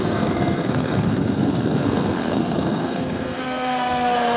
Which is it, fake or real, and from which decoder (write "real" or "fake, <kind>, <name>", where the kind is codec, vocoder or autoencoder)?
fake, codec, SNAC